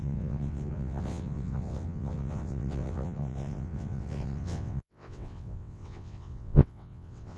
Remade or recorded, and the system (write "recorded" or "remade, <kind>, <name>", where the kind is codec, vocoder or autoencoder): remade, vocoder, WaveNeXt